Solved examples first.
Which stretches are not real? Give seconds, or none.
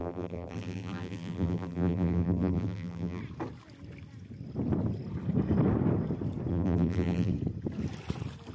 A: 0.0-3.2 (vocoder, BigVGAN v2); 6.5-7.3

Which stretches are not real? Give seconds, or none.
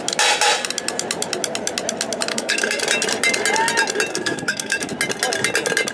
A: 2.3-2.8 (codec, SNAC); 4.1-4.9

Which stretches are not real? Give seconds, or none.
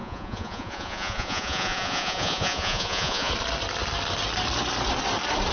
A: 0.0-3.3 (vocoder, Vocos)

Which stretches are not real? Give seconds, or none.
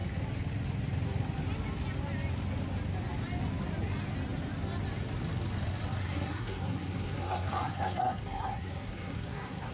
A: 6.0-9.7 (codec, SNAC)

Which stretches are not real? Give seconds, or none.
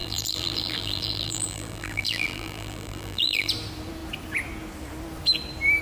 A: 0.0-3.5 (vocoder, BigVGAN v2)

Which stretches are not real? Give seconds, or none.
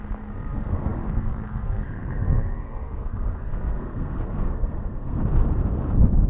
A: 0.0-5.2 (codec, SNAC)